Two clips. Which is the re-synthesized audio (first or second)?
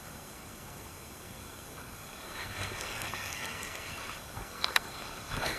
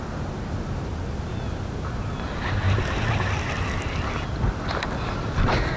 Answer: first